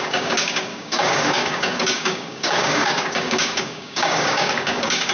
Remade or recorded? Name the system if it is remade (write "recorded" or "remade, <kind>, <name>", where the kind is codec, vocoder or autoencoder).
remade, codec, DAC